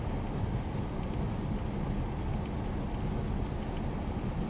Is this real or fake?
real